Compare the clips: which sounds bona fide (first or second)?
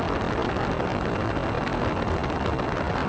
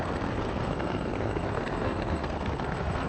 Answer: first